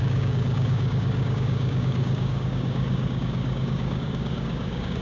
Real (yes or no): no